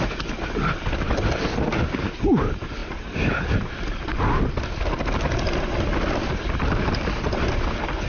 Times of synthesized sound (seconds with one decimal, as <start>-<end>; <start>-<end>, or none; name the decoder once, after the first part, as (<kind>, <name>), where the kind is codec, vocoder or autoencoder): none

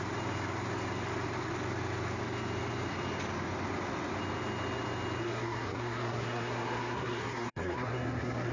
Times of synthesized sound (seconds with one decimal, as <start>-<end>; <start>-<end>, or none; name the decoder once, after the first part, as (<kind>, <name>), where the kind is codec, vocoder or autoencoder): 5.2-8.5 (codec, SNAC)

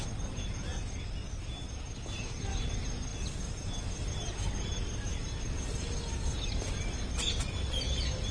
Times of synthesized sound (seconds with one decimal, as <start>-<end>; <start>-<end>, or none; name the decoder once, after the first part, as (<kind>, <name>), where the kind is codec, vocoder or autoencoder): none

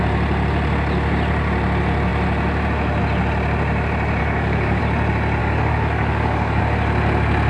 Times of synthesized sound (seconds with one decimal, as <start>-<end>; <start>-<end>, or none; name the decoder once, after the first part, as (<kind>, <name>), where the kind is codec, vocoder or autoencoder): 4.2-4.8 (codec, DAC); 5.4-6.6

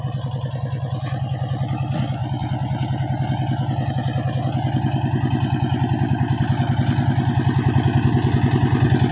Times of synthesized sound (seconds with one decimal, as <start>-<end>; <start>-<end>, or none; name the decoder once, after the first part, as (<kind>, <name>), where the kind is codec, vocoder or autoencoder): none